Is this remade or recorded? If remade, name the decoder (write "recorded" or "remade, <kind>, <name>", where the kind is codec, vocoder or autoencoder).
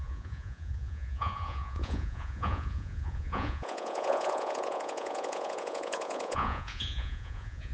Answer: remade, vocoder, Vocos